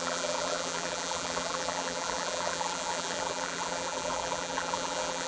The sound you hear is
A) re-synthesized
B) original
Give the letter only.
A